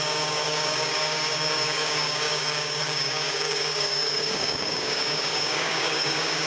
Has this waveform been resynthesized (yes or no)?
yes